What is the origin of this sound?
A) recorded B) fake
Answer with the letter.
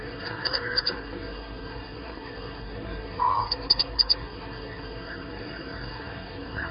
B